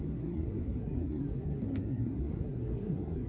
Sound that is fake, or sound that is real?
fake